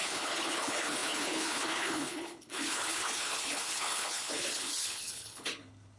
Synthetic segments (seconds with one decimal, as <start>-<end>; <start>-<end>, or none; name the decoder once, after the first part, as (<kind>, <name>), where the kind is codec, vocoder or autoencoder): 0.0-6.0 (codec, HILCodec)